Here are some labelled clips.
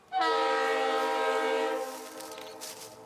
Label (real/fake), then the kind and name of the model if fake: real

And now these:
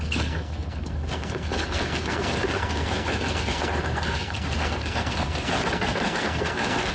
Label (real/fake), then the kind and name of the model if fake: fake, codec, SNAC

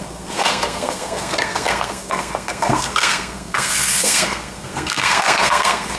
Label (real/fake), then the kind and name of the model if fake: fake, codec, SNAC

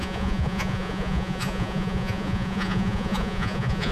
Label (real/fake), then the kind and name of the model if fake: fake, vocoder, Vocos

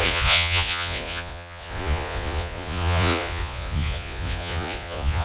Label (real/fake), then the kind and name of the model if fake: fake, vocoder, Vocos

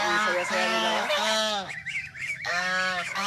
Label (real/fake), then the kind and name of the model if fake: fake, autoencoder, DAC-VAE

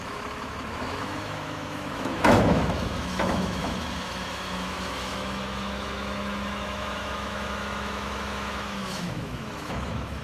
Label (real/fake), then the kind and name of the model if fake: fake, autoencoder, DAC-VAE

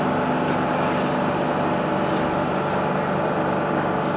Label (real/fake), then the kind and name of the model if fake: real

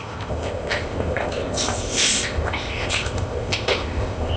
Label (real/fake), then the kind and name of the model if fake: fake, codec, ZipCodec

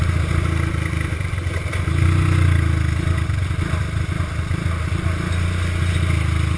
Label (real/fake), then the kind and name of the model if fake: real